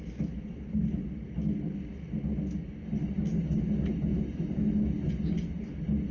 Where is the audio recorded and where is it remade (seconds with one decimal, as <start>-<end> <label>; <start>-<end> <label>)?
0.0-6.1 recorded